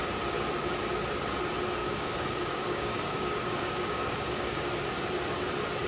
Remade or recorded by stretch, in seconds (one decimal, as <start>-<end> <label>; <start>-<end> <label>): 0.0-1.8 recorded; 1.8-4.7 remade; 4.7-5.9 recorded